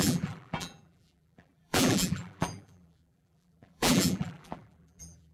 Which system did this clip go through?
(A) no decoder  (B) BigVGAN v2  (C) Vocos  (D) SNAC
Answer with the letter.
B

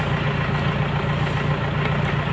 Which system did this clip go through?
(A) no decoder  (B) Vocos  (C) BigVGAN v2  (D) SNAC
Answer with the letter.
A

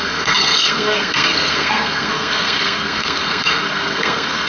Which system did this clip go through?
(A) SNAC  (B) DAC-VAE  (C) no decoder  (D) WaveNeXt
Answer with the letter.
A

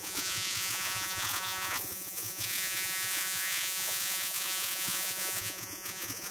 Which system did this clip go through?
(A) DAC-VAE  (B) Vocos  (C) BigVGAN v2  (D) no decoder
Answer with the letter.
B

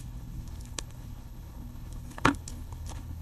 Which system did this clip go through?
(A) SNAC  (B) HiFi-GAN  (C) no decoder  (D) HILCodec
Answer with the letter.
D